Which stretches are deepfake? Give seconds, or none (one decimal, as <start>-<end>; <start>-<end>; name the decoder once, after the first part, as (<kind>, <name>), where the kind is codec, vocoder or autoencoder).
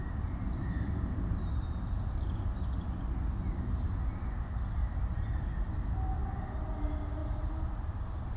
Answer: 0.6-1.5 (vocoder, BigVGAN v2); 4.8-5.7; 7.2-8.4